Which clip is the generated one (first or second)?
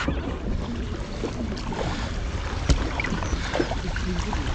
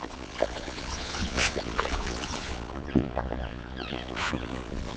second